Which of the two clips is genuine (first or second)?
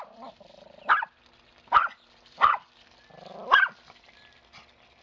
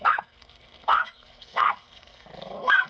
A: first